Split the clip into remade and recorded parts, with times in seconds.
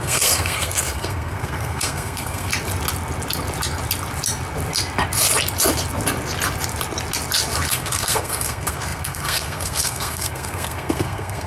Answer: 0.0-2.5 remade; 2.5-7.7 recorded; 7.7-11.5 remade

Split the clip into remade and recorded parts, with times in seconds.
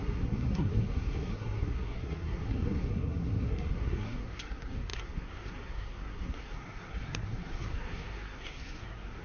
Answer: 0.0-9.2 remade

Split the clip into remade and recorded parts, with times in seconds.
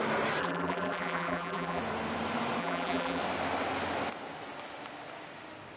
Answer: 0.0-0.4 recorded; 0.4-1.8 remade; 1.8-2.6 recorded; 2.6-3.2 remade; 3.2-5.8 recorded